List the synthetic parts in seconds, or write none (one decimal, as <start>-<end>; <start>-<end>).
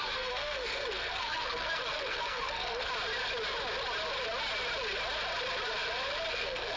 0.0-2.9; 6.3-6.8